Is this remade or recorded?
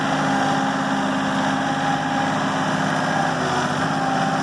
recorded